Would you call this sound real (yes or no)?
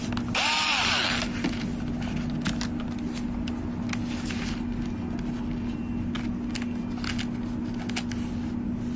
yes